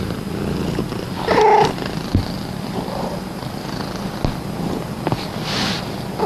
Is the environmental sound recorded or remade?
recorded